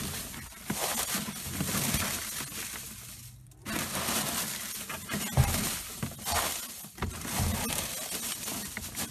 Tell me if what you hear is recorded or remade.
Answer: recorded